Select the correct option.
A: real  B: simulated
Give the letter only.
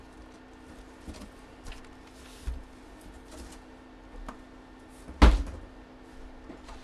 A